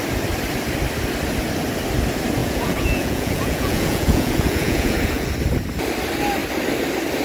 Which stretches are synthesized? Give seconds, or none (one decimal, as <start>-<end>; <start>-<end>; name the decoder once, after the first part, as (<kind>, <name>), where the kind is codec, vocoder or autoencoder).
2.4-5.3 (vocoder, Vocos)